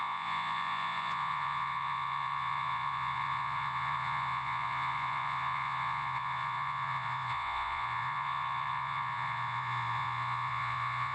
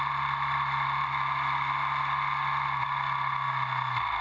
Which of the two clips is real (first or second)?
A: second